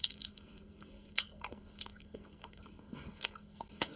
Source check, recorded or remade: remade